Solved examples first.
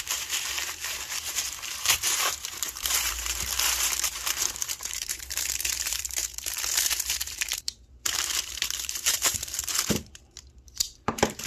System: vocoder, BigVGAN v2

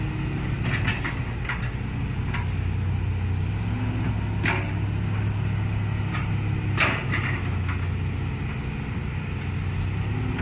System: none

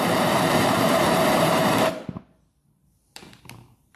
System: vocoder, BigVGAN v2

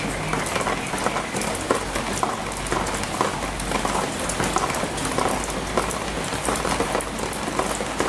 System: none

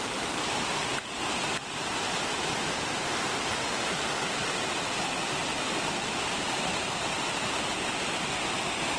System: vocoder, BigVGAN v2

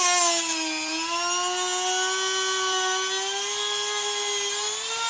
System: none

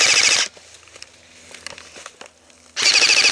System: none